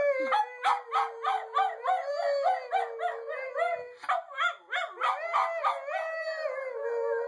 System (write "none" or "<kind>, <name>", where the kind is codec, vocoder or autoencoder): none